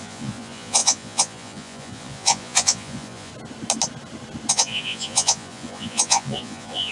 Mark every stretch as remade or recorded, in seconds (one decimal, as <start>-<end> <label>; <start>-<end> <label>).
0.0-3.3 remade; 3.3-4.5 recorded; 4.5-6.9 remade